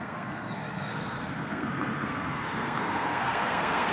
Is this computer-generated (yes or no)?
yes